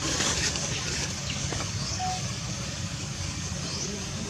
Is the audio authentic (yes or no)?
no